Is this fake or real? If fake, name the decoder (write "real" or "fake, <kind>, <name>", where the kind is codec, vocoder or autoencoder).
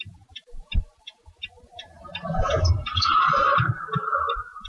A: fake, vocoder, BigVGAN v2